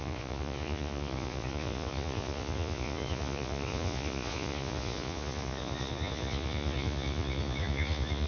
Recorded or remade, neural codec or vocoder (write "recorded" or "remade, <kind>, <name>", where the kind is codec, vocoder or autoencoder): remade, vocoder, Vocos